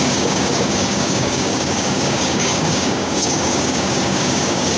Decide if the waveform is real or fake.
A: fake